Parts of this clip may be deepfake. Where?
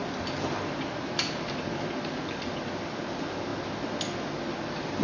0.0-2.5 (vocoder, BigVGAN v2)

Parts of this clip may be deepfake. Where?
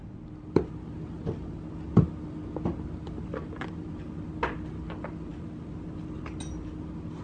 none